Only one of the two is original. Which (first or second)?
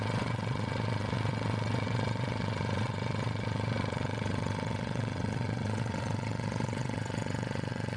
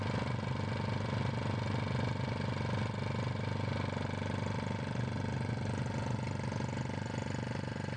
second